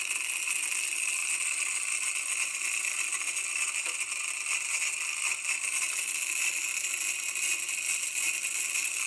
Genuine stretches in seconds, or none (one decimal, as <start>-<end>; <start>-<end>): 0.0-9.1